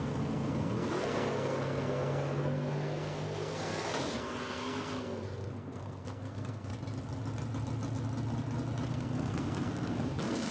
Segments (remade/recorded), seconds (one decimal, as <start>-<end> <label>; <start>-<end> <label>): 0.0-6.7 remade; 6.7-8.9 recorded; 8.9-10.5 remade